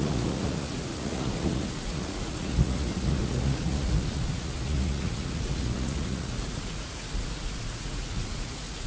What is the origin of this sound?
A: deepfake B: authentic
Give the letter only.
A